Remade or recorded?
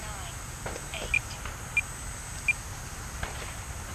recorded